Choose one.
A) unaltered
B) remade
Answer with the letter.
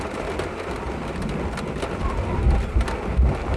A